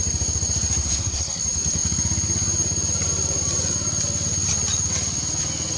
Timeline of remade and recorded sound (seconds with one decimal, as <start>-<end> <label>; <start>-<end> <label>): 0.0-0.8 recorded; 0.8-1.4 remade; 1.4-5.8 recorded